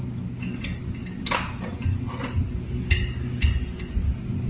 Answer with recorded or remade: recorded